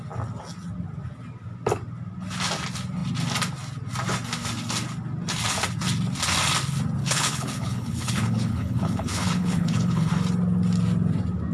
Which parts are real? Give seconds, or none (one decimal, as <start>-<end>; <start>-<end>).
0.0-7.0; 10.1-11.5